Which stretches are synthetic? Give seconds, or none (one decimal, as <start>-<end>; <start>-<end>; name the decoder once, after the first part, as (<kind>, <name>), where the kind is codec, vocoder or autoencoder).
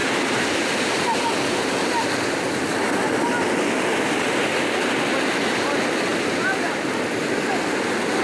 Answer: 0.0-0.9 (vocoder, BigVGAN v2); 6.1-7.2